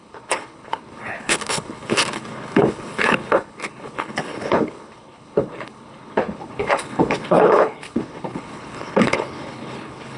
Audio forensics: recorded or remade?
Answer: remade